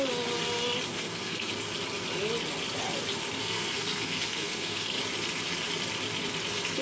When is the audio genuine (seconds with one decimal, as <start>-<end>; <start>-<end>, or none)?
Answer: 0.0-0.9; 1.5-3.4; 5.0-6.8